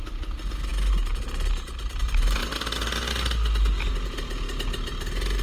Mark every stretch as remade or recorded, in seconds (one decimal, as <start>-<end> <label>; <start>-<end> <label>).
0.0-5.4 recorded

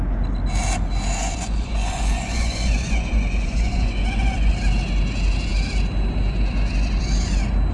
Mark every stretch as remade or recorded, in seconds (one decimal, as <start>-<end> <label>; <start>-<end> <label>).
0.0-1.2 recorded; 1.2-4.5 remade; 4.5-7.7 recorded

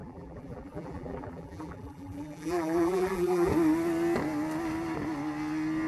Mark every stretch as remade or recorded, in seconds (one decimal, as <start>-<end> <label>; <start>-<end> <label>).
0.0-3.5 remade; 3.5-5.9 recorded

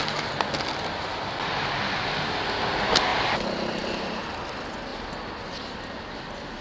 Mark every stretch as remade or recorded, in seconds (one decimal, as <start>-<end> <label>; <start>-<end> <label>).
0.0-3.1 recorded; 3.1-4.3 remade; 4.3-6.6 recorded

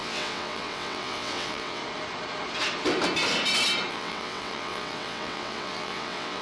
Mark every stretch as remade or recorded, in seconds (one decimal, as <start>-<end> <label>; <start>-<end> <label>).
0.0-1.8 remade; 1.8-3.9 recorded; 3.9-6.4 remade

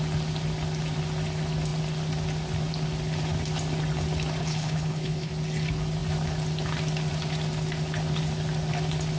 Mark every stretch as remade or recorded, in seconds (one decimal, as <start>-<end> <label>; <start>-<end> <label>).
0.0-4.4 recorded; 4.4-5.3 remade; 5.3-9.2 recorded

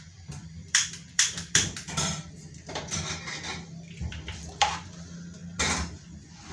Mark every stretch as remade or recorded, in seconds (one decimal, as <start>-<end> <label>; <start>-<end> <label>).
0.0-5.4 remade; 5.4-6.5 recorded